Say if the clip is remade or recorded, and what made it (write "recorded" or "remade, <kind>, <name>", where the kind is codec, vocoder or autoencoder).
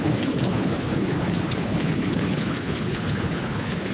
remade, codec, HILCodec